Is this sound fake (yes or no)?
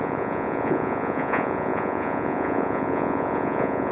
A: yes